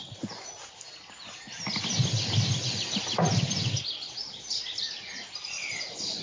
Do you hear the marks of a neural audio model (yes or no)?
no